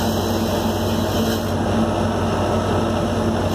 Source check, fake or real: real